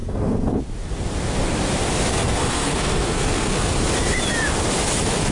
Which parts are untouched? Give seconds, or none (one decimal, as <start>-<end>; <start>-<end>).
0.6-2.1; 3.7-5.3